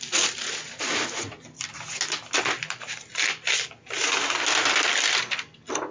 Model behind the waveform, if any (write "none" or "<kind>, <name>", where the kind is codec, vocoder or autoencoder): none